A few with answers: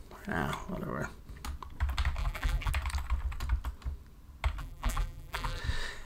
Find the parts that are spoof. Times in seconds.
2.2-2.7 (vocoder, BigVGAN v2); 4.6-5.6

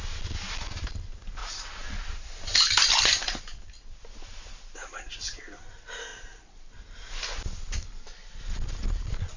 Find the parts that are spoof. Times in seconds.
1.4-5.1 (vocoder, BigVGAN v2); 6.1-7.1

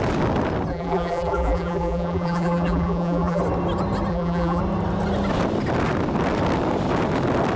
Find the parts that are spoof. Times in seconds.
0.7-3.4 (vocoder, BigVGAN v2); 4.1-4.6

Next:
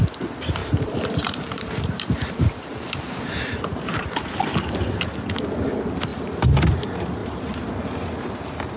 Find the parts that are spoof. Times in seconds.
0.6-4.4 (vocoder, BigVGAN v2); 7.2-7.7

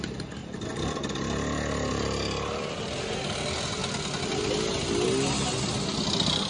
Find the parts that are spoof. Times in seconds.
none